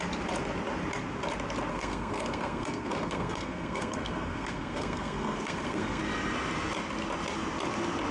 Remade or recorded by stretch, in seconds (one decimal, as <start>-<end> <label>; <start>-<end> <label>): 0.0-1.7 recorded; 1.7-6.0 remade; 6.0-8.1 recorded